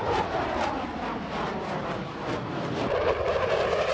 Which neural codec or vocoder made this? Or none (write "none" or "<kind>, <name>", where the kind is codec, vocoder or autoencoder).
vocoder, BigVGAN v2